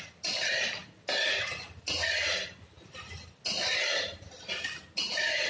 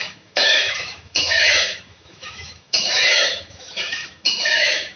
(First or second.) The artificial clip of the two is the second